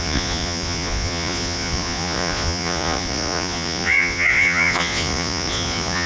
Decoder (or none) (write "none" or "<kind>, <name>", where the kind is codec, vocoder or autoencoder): vocoder, Vocos